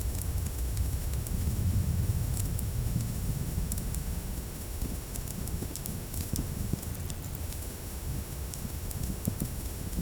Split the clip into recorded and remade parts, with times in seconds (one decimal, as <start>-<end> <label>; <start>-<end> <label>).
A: 0.0-6.9 remade; 6.9-7.4 recorded; 7.4-10.0 remade

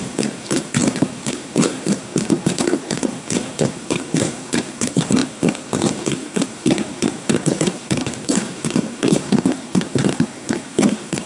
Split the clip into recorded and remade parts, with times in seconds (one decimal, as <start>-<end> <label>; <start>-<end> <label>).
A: 0.0-11.3 remade

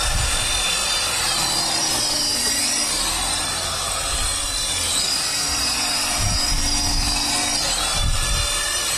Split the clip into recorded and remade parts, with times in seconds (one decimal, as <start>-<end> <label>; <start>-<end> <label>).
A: 0.0-9.0 recorded

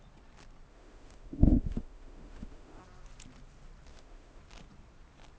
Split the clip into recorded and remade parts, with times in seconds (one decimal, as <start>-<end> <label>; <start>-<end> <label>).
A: 0.0-0.7 recorded; 0.7-2.8 remade; 2.8-3.9 recorded; 3.9-4.4 remade; 4.4-5.4 recorded

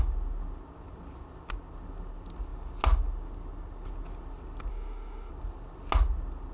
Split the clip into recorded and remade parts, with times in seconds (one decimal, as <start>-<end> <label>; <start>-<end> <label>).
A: 0.0-4.7 recorded; 4.7-5.3 remade; 5.3-6.5 recorded

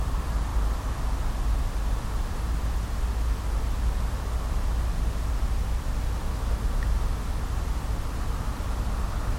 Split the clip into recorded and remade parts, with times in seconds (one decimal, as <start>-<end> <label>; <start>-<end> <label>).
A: 0.0-9.4 recorded

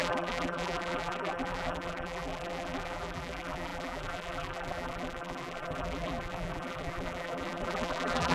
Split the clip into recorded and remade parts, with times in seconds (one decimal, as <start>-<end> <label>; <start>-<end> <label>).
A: 0.0-8.3 remade